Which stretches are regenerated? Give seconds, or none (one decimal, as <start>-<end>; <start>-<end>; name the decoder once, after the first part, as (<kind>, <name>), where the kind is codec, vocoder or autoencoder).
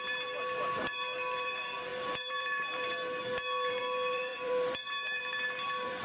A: 0.0-6.0 (vocoder, BigVGAN v2)